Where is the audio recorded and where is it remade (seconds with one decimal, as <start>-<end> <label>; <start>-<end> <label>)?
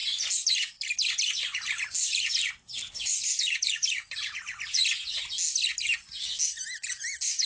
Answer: 0.0-1.2 recorded; 1.2-4.8 remade; 4.8-7.0 recorded; 7.0-7.5 remade